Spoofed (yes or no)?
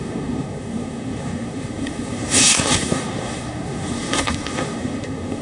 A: yes